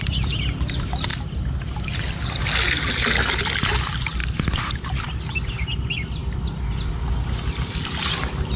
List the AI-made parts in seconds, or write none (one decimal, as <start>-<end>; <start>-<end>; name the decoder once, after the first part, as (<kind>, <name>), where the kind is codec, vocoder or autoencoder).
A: none